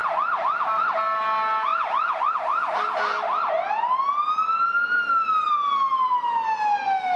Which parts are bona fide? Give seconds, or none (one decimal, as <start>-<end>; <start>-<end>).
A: 0.0-7.2